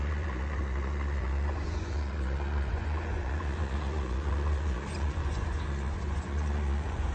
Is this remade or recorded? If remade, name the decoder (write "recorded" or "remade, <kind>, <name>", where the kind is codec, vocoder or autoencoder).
remade, vocoder, Vocos